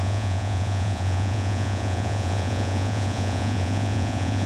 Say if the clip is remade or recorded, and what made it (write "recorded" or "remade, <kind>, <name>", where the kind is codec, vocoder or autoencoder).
remade, vocoder, Vocos